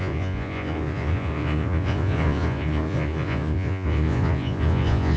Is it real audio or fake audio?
fake